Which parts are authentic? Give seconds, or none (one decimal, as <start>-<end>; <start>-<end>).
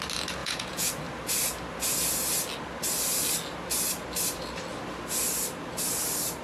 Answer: 0.0-0.4; 0.9-6.4